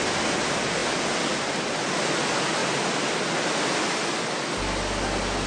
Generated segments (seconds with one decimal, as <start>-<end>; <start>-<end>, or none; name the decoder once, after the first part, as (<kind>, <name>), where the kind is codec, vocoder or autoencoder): none